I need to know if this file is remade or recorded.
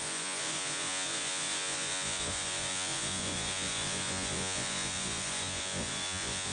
remade